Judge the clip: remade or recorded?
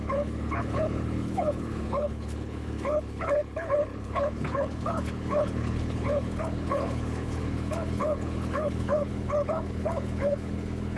remade